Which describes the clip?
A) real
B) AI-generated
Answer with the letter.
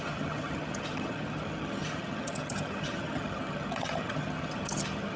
B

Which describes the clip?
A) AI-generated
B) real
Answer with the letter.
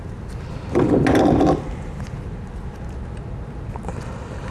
B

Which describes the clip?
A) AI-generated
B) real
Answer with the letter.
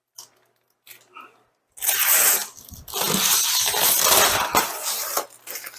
B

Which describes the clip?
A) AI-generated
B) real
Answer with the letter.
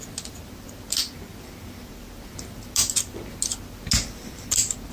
B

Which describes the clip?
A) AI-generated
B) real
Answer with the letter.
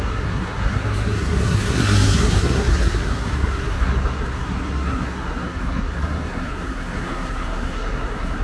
A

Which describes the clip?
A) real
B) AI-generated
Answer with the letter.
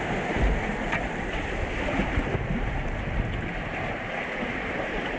A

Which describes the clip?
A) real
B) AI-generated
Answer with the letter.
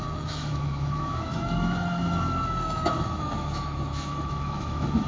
B